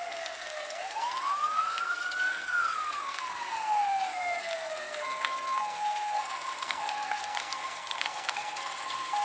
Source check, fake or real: fake